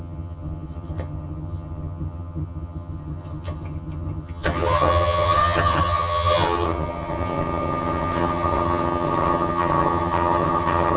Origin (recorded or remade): remade